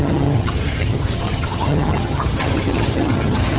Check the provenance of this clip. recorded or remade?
remade